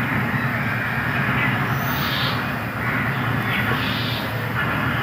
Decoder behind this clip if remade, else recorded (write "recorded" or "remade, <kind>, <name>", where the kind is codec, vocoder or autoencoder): recorded